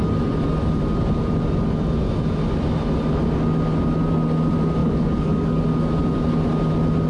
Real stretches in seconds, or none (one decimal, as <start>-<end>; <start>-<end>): 0.0-4.8; 5.6-7.1

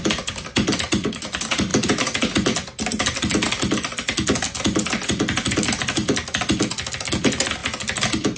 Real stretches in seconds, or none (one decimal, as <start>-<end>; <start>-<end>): 0.0-8.4

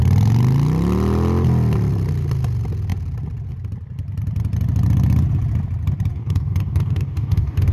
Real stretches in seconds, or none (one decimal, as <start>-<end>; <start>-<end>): 0.0-6.1

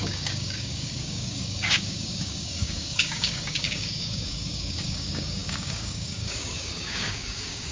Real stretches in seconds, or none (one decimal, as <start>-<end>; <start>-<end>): none